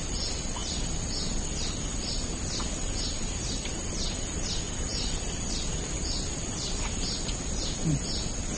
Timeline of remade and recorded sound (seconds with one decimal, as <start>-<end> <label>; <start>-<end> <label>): 0.0-0.6 recorded; 0.6-2.1 remade; 2.1-8.6 recorded